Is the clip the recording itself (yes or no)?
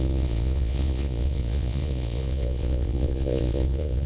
no